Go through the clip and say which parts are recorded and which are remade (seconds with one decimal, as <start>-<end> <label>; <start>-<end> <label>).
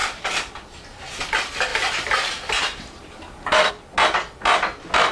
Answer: 0.0-1.0 remade; 1.0-1.7 recorded; 1.7-3.7 remade; 3.7-5.1 recorded